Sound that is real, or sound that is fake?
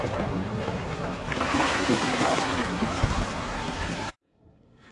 fake